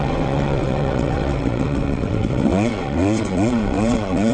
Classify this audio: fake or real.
fake